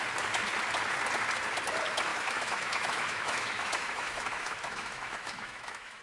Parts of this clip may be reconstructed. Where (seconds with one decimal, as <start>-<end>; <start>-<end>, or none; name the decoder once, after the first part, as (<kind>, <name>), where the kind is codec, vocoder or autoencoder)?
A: 2.1-6.0 (autoencoder, DAC-VAE)